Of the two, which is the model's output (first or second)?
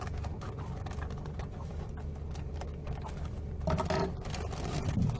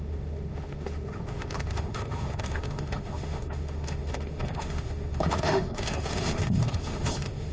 second